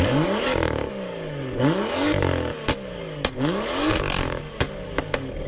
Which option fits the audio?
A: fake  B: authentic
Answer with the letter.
A